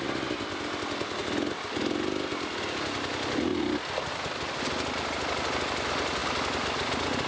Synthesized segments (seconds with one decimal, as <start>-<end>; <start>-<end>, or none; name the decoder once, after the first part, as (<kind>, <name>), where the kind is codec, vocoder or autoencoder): none